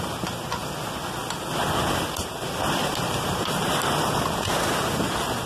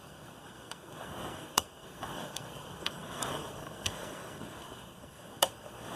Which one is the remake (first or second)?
second